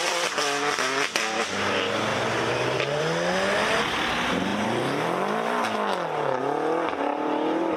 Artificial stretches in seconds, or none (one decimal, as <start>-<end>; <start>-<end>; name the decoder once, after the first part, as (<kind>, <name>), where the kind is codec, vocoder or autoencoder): 2.1-3.0 (vocoder, BigVGAN v2); 4.5-6.4